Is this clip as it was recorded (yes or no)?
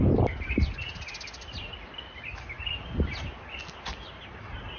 yes